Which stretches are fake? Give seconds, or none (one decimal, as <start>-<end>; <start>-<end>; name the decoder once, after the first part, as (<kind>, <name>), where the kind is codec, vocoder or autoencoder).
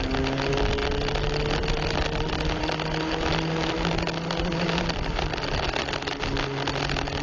none